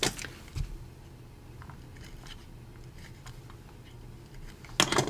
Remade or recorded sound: recorded